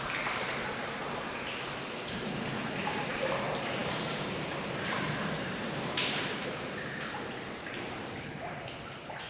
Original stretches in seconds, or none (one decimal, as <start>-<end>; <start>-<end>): none